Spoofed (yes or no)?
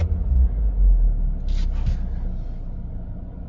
no